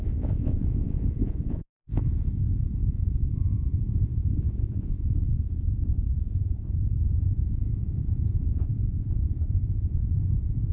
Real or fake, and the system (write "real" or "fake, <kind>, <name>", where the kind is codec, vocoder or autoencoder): fake, vocoder, Vocos